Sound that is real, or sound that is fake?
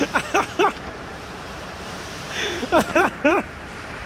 fake